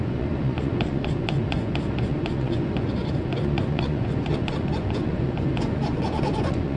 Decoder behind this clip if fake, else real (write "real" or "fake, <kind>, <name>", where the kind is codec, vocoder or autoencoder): fake, vocoder, Vocos